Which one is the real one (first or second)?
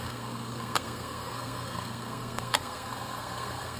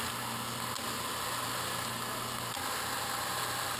second